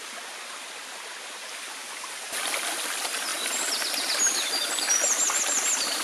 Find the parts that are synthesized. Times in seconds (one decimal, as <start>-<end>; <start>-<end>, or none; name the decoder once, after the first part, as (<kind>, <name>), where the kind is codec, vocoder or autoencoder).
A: none